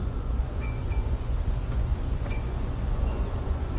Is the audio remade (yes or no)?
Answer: yes